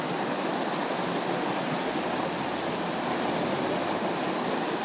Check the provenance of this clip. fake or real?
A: real